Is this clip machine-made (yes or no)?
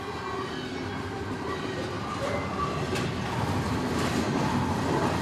no